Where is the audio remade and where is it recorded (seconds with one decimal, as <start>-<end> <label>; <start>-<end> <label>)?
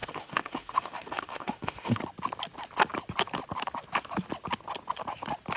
0.0-2.0 remade; 2.0-5.6 recorded